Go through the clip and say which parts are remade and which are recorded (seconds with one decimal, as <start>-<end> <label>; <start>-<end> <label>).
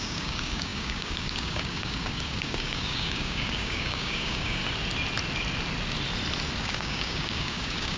0.0-4.6 remade; 4.6-6.6 recorded; 6.6-8.0 remade